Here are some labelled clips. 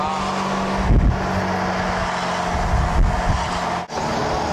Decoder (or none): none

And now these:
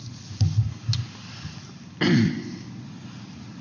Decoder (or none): none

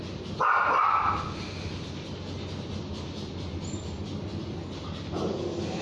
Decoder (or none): none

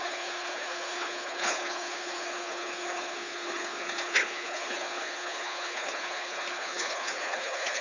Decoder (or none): codec, HILCodec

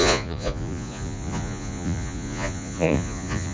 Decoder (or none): vocoder, Vocos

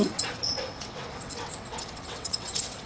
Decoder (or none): vocoder, WaveNeXt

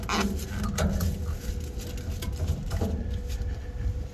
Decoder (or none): none